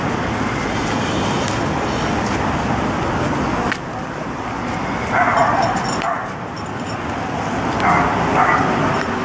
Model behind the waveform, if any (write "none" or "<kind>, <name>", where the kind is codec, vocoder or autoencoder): none